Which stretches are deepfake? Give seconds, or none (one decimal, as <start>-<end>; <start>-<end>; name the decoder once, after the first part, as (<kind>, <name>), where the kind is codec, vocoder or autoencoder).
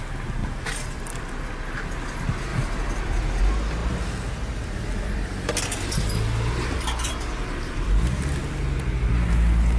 0.4-1.4 (vocoder, BigVGAN v2); 2.5-3.4; 3.8-8.4